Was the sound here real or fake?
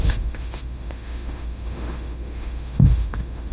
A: fake